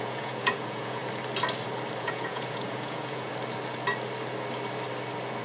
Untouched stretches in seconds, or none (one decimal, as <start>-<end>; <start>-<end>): 1.0-2.0; 3.3-5.4